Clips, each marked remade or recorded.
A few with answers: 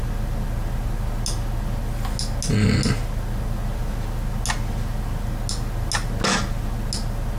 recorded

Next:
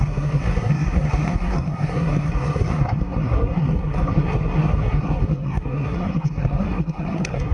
remade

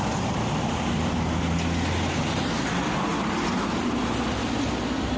recorded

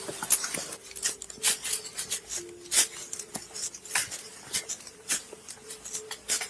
recorded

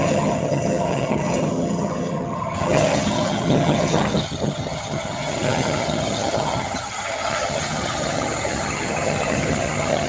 remade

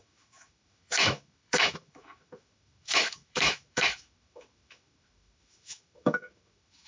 remade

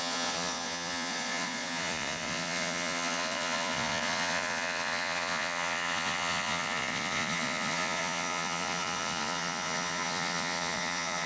remade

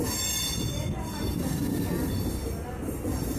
recorded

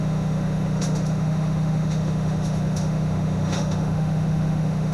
remade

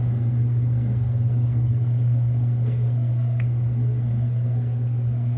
remade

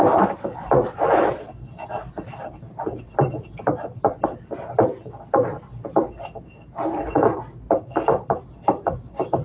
recorded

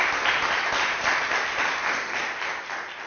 recorded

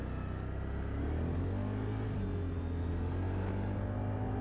recorded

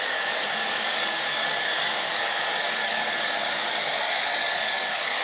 remade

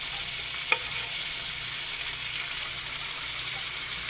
recorded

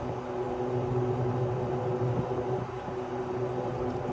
recorded